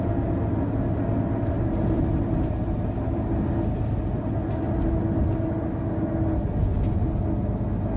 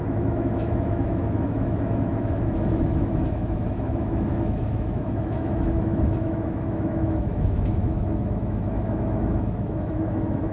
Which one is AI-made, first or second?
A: second